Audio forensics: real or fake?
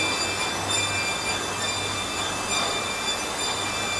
real